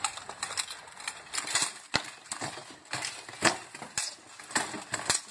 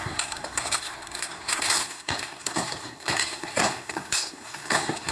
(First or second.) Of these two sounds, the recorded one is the first